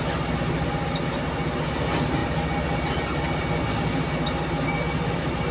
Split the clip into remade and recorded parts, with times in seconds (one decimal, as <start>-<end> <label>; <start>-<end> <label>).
0.0-5.5 recorded